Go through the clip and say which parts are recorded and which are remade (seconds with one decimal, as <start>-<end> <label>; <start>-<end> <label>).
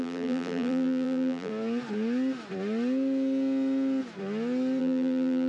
0.0-1.5 remade; 1.5-4.8 recorded; 4.8-5.5 remade